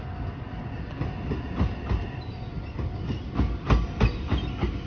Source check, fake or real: real